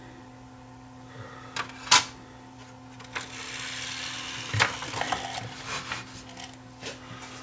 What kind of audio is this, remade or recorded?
recorded